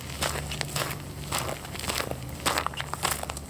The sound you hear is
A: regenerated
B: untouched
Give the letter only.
B